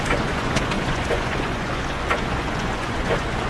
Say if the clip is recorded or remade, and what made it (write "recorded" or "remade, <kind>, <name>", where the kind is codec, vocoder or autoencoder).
remade, vocoder, Vocos